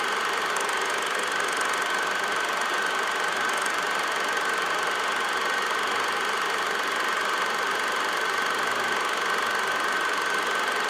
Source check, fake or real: real